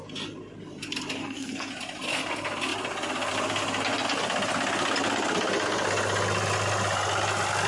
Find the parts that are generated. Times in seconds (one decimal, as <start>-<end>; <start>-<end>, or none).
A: 1.2-1.7